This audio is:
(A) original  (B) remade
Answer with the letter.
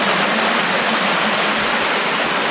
A